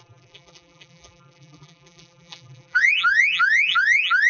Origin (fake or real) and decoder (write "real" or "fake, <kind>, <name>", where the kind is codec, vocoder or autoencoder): fake, vocoder, BigVGAN v2